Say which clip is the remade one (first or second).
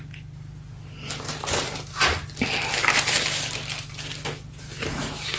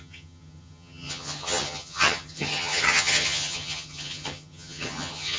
second